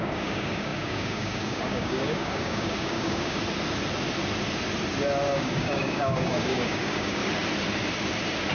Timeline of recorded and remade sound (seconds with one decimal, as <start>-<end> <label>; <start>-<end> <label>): 0.0-3.4 remade; 3.4-5.3 recorded; 5.3-7.2 remade; 7.2-8.5 recorded